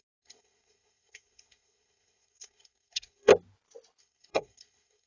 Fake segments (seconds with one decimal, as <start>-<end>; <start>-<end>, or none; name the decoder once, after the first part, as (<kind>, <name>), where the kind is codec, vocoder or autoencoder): 0.0-3.3 (codec, SNAC); 4.0-5.1